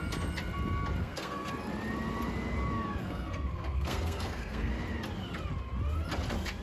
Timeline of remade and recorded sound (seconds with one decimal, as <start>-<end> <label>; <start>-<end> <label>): 0.0-1.0 recorded; 1.0-1.5 remade; 1.5-3.0 recorded; 3.0-4.7 remade; 4.7-6.6 recorded